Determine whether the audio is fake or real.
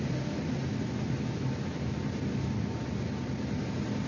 real